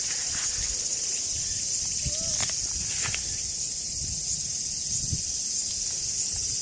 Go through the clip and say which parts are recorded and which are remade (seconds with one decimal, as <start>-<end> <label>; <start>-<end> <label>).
0.0-6.6 recorded